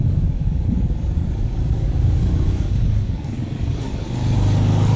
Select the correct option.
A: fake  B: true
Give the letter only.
A